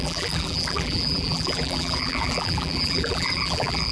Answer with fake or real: fake